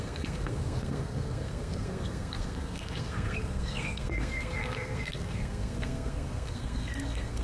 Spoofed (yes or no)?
yes